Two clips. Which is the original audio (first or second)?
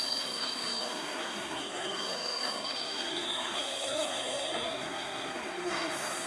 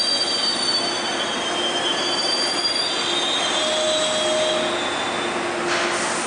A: second